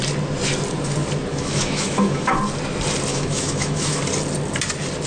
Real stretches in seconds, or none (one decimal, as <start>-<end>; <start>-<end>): 0.0-1.3; 2.4-3.1; 4.0-5.1